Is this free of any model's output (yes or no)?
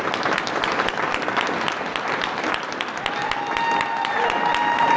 yes